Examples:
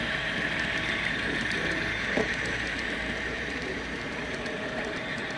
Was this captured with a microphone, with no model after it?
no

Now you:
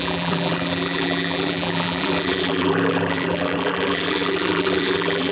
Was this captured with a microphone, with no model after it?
no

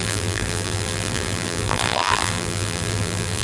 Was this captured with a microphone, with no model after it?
no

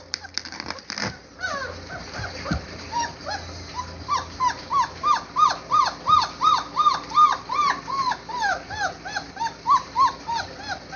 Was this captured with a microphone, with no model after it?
no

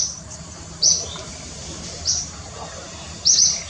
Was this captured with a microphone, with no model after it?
no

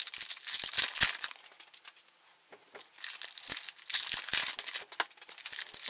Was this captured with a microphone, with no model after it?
yes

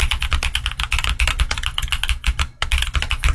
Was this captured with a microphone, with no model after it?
yes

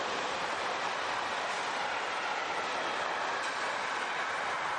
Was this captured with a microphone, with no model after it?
yes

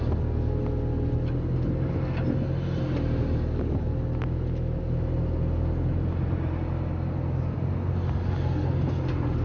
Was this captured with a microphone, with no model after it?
yes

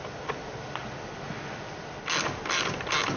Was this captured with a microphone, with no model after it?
yes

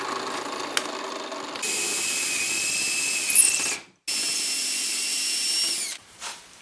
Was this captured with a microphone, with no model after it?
yes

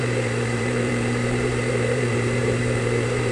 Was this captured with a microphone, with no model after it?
no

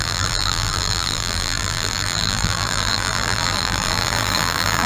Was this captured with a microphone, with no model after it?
no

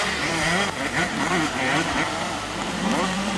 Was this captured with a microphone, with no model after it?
no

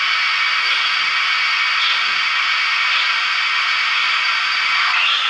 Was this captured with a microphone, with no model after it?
yes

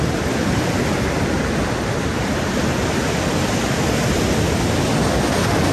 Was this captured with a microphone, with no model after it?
yes